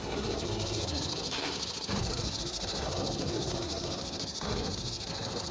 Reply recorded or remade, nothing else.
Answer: remade